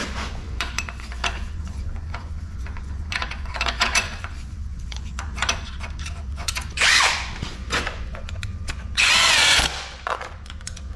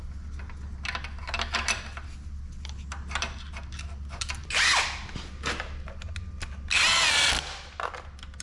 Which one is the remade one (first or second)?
first